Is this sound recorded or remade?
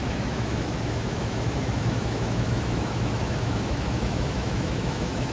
remade